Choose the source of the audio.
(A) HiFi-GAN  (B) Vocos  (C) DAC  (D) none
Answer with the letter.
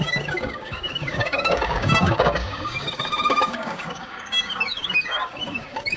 C